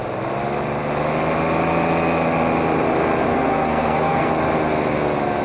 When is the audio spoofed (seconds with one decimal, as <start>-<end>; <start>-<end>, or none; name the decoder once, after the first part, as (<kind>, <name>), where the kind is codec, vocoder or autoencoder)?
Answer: 3.3-4.3 (codec, SNAC)